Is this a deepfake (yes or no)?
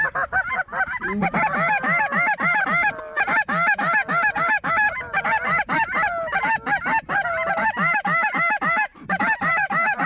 no